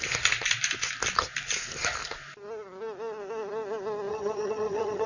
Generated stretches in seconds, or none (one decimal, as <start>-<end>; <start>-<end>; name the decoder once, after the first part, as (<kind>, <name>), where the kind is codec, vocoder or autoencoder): 4.1-5.1 (vocoder, HiFi-GAN)